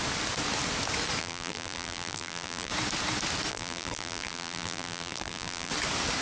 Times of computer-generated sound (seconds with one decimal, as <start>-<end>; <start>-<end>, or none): 1.2-2.7; 3.5-5.7